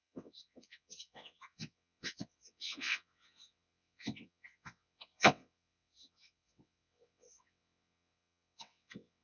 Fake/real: fake